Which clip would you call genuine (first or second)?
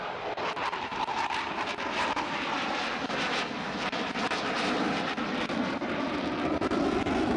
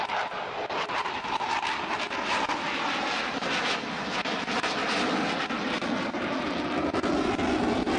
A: second